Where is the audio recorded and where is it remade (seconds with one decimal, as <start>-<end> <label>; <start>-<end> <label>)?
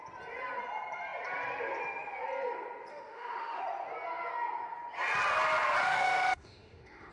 0.0-2.9 recorded; 2.9-3.6 remade; 3.6-5.8 recorded; 5.8-7.1 remade